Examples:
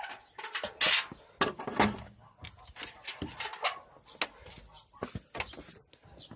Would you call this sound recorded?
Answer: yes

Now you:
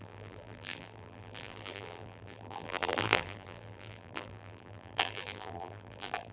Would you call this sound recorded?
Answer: no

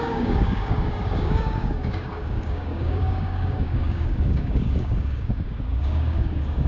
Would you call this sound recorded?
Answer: no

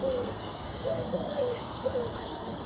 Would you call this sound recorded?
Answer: no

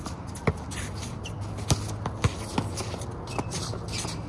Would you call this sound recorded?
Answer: yes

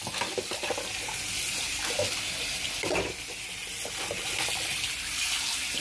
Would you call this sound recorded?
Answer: yes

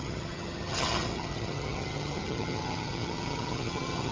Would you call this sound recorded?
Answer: no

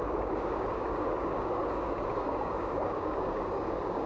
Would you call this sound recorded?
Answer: no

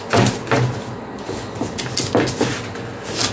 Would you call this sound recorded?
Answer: yes